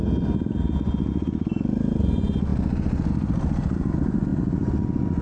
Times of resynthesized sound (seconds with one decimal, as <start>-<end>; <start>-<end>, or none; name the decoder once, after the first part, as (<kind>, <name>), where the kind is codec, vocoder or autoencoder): none